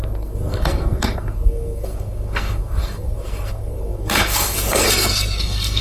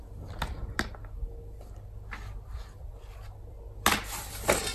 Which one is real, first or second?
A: second